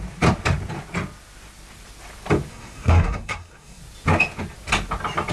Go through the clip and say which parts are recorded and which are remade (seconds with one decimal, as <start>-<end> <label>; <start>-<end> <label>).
0.0-2.5 recorded; 2.5-3.8 remade; 3.8-5.3 recorded